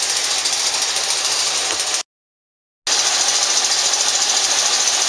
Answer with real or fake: real